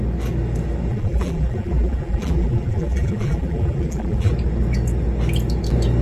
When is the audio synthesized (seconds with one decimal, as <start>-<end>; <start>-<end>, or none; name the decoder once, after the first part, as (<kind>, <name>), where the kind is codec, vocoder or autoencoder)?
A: 0.9-4.3 (vocoder, BigVGAN v2)